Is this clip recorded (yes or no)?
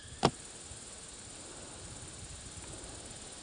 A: yes